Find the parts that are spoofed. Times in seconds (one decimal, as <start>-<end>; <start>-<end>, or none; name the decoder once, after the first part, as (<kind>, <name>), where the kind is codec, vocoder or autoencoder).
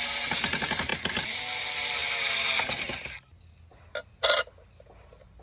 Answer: none